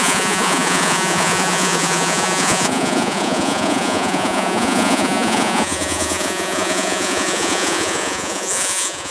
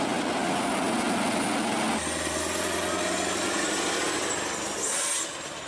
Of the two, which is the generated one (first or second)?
first